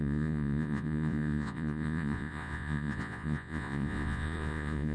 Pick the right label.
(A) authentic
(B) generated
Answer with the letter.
B